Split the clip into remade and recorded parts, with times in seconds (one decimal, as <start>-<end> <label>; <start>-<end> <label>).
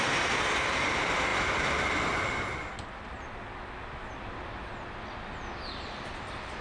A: 0.0-6.6 recorded